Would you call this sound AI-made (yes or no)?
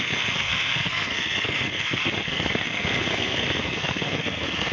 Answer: yes